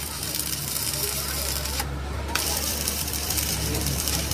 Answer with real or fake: fake